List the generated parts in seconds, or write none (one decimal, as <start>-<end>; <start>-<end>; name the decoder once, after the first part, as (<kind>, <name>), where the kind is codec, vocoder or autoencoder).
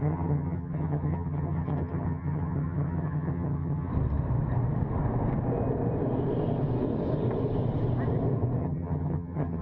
0.0-3.9 (vocoder, HiFi-GAN); 8.6-9.6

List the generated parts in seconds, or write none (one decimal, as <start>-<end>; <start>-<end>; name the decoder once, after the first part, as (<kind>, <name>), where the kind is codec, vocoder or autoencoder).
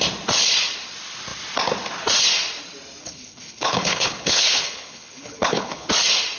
3.0-5.9 (codec, HILCodec)